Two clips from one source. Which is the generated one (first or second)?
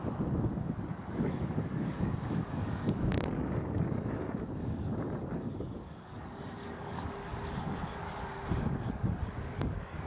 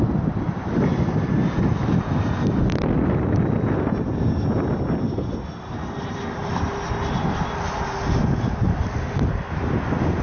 first